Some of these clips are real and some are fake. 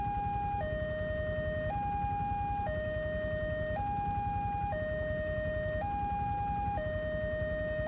real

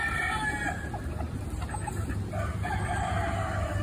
real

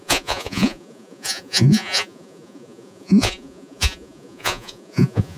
fake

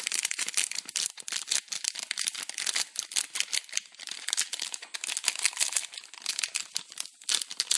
real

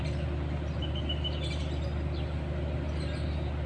real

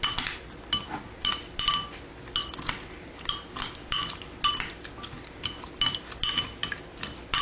real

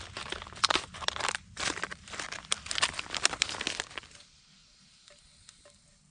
real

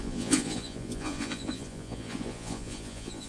fake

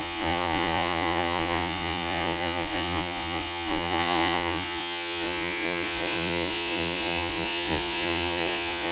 fake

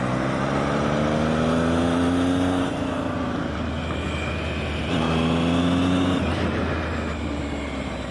real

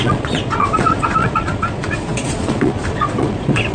fake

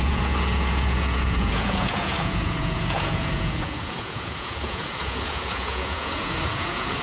fake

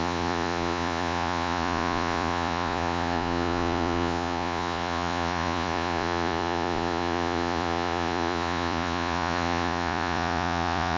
fake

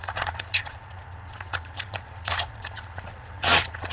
fake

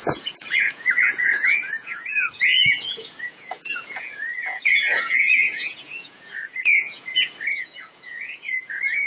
fake